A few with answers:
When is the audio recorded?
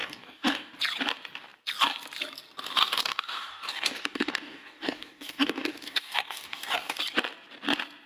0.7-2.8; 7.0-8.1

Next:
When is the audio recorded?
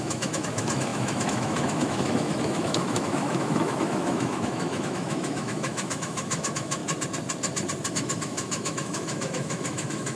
6.8-7.9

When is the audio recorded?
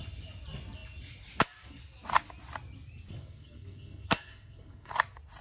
0.0-3.1; 4.9-5.4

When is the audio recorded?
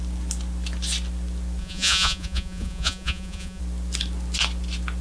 0.0-1.6; 3.6-5.0